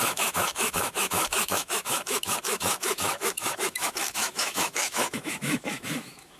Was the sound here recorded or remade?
remade